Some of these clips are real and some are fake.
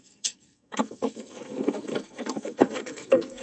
fake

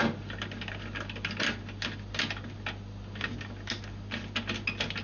real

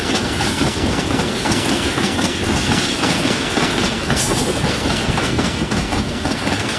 fake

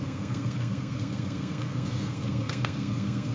fake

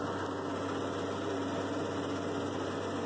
real